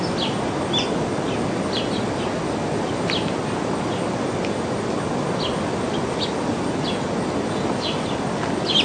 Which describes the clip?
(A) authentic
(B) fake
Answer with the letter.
A